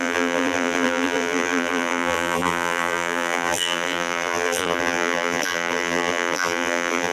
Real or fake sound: fake